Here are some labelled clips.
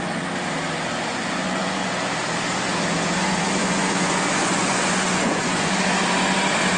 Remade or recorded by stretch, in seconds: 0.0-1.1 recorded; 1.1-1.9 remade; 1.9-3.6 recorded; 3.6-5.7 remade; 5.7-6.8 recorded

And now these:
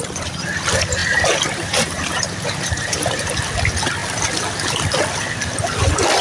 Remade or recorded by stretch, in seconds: 0.0-1.0 recorded; 1.0-3.3 remade; 3.3-6.2 recorded

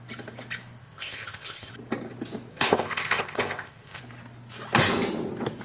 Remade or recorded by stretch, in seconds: 0.0-0.8 recorded; 0.8-1.7 remade; 1.7-2.5 recorded; 2.5-4.0 remade; 4.0-5.6 recorded

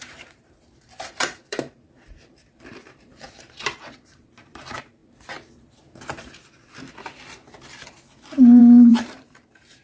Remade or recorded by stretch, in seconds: 0.0-5.0 remade; 5.0-8.6 recorded; 8.6-9.8 remade

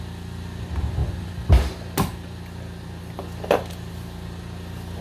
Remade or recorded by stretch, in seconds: 0.0-5.0 recorded